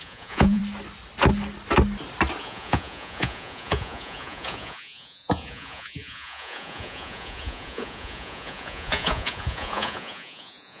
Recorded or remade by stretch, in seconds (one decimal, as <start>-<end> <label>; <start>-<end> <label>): 0.0-0.6 remade; 0.6-2.4 recorded; 2.4-10.8 remade